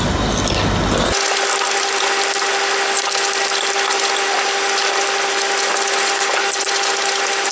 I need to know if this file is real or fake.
real